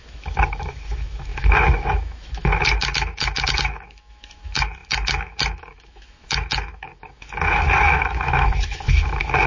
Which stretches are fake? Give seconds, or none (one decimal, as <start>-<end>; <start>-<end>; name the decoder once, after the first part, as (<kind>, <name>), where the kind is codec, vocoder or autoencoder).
0.0-9.5 (autoencoder, DAC-VAE)